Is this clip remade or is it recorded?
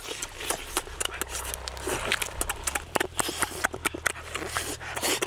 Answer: recorded